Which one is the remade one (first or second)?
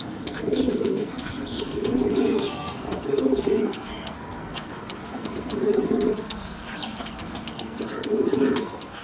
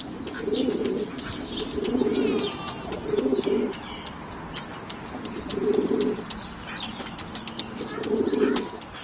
first